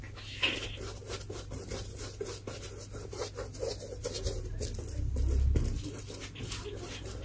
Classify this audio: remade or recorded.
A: recorded